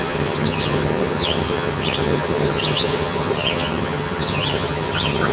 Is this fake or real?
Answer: fake